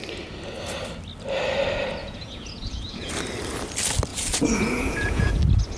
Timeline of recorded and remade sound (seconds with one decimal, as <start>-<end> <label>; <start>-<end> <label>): 0.0-2.0 recorded; 2.0-3.1 remade; 3.1-4.1 recorded; 4.1-5.3 remade; 5.3-5.8 recorded